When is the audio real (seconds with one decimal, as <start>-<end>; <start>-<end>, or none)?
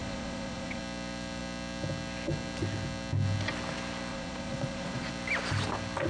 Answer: 0.8-4.1; 5.1-6.1